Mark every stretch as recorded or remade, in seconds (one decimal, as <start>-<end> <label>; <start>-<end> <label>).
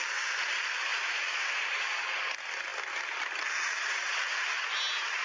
0.0-5.2 recorded